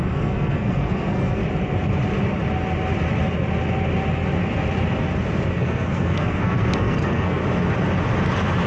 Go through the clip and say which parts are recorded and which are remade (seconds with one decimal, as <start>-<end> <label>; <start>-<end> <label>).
0.0-1.4 remade; 1.4-5.5 recorded; 5.5-7.4 remade; 7.4-8.7 recorded